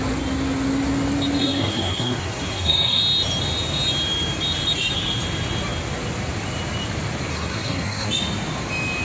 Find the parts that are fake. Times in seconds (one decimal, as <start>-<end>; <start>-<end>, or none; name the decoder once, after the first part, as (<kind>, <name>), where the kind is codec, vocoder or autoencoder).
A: 1.4-3.0 (codec, SNAC); 7.3-8.1